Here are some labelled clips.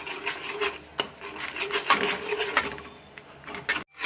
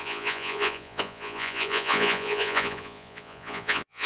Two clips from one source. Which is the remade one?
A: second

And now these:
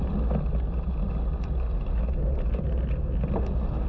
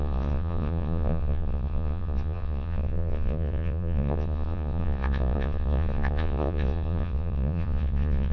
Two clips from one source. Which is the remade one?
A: second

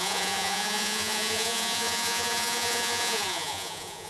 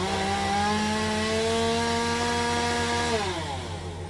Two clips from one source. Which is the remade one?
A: first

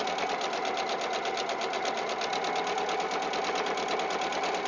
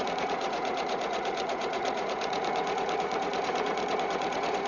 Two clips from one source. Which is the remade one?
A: second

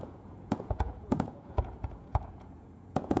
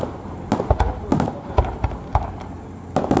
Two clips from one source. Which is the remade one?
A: first